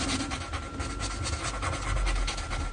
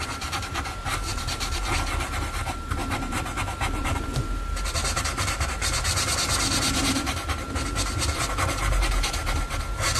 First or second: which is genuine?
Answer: first